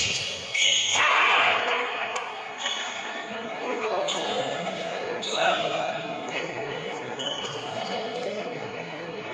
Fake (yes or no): yes